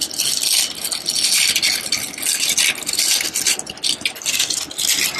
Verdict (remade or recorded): recorded